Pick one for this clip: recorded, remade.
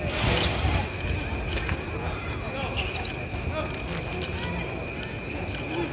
recorded